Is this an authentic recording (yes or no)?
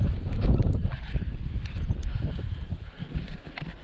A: no